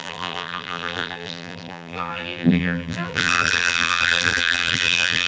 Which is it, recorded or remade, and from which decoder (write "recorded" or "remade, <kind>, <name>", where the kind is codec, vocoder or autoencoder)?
remade, vocoder, BigVGAN v2